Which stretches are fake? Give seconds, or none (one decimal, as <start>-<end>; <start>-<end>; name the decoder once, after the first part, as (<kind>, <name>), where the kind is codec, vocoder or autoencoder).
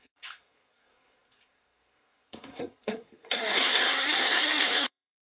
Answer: 0.0-5.3 (codec, SNAC)